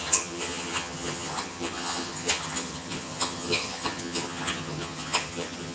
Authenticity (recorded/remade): remade